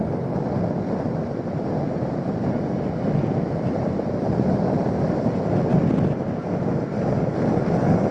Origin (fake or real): real